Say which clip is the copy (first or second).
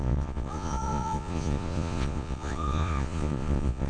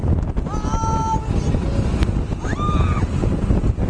first